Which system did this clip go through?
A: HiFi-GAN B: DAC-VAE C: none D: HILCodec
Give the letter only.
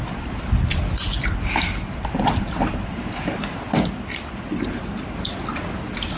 C